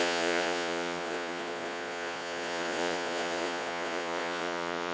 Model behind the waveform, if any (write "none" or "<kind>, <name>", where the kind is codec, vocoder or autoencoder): vocoder, Vocos